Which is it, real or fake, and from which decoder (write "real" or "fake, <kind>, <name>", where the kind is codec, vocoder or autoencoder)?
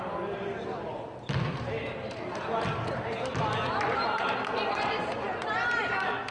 real